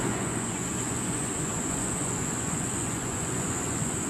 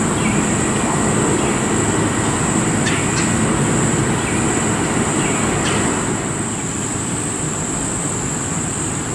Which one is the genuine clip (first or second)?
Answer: second